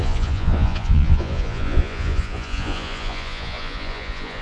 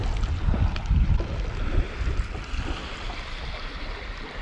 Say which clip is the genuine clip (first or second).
second